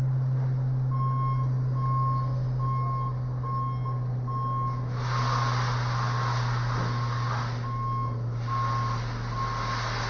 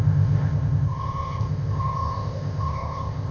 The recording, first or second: first